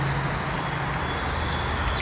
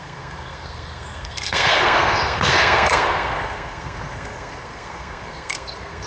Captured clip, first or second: first